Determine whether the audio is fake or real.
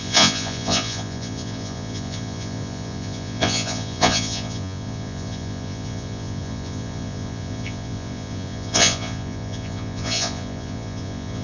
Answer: fake